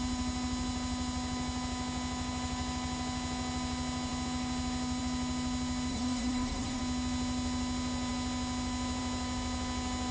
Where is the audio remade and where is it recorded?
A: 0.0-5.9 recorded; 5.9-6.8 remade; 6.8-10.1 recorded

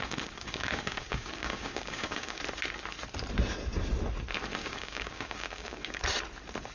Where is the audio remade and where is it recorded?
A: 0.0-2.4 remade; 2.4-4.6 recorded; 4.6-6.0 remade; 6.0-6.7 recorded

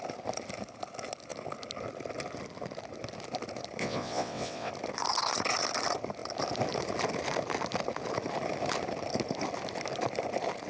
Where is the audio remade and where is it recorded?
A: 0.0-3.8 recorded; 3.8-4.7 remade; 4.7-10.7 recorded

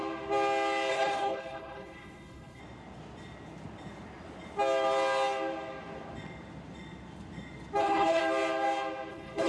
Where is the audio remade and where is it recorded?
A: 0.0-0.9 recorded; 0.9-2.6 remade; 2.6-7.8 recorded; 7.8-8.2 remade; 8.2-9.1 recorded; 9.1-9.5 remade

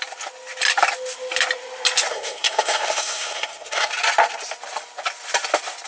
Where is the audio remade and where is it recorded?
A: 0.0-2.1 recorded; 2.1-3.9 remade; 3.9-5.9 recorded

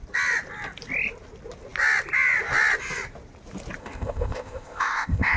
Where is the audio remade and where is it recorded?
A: 0.0-3.8 recorded; 3.8-5.4 remade

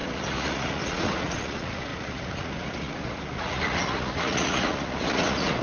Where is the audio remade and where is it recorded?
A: 0.0-5.6 remade

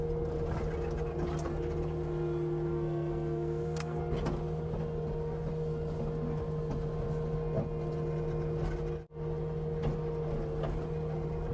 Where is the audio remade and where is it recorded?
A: 0.0-2.7 recorded; 2.7-4.0 remade; 4.0-11.5 recorded